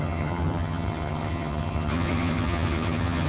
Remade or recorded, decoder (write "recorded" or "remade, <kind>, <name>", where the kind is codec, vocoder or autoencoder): remade, vocoder, HiFi-GAN